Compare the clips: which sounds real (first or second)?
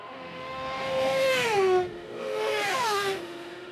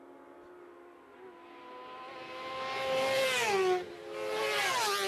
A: second